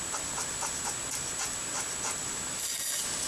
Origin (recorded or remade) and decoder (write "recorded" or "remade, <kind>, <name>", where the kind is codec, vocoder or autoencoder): recorded